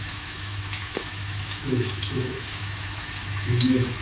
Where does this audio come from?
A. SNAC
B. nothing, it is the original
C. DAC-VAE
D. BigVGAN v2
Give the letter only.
C